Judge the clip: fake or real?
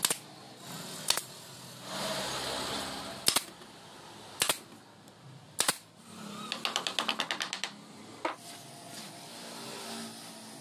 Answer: real